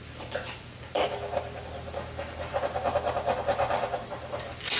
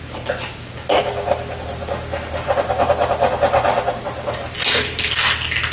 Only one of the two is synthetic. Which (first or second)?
first